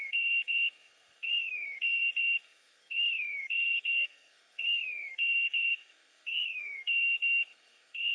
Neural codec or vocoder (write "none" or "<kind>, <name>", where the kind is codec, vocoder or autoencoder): codec, SNAC